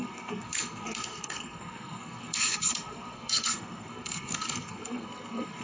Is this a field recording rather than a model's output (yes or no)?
no